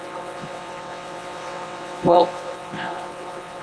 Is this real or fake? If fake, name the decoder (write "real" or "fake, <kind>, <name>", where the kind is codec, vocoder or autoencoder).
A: fake, vocoder, WaveNeXt